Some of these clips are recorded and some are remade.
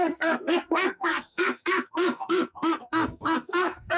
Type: remade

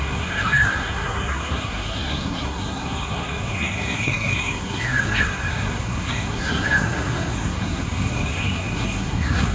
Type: remade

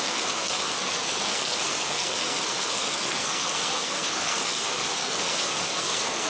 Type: remade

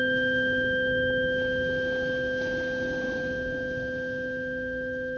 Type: recorded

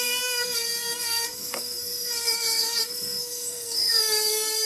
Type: remade